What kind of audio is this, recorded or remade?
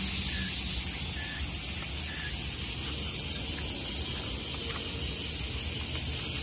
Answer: recorded